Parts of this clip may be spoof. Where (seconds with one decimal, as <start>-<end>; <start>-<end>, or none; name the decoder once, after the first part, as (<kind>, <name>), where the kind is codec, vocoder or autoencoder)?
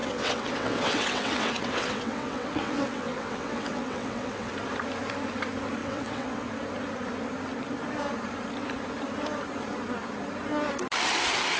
0.0-4.5 (vocoder, WaveNeXt); 5.8-6.5